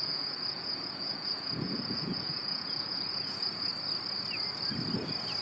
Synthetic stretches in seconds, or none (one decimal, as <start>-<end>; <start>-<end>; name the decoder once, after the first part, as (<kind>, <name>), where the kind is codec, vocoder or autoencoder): 0.0-3.7 (vocoder, Vocos)